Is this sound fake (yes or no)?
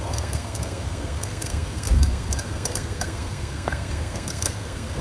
yes